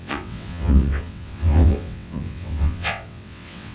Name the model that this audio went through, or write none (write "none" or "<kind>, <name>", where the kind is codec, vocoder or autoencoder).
vocoder, WaveNeXt